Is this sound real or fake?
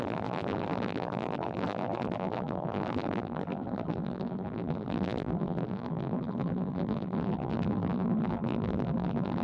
fake